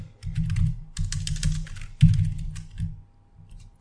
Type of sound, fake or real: real